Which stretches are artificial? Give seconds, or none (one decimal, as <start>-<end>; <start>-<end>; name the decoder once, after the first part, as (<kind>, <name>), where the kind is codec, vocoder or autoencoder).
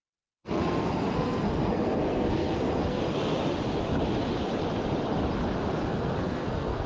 0.0-3.0 (codec, SNAC); 5.8-6.9